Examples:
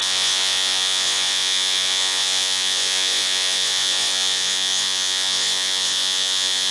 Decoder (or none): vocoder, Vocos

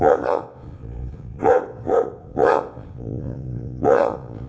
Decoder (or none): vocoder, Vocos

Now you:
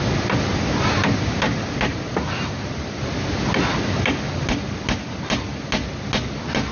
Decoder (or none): none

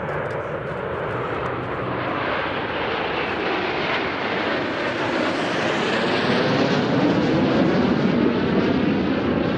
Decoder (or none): none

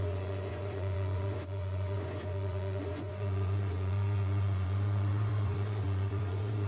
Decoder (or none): vocoder, Vocos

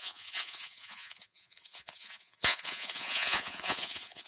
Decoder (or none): vocoder, Vocos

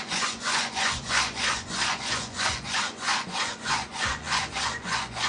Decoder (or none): vocoder, Vocos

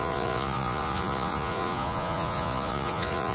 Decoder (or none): vocoder, Vocos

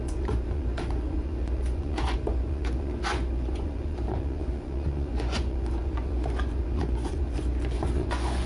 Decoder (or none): vocoder, Vocos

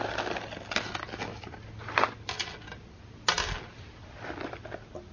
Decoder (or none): none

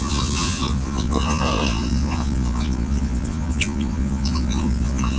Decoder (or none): vocoder, Vocos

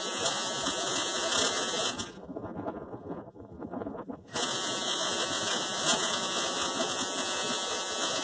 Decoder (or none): vocoder, Vocos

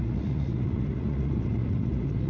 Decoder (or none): vocoder, Vocos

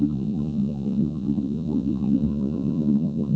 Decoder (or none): vocoder, Vocos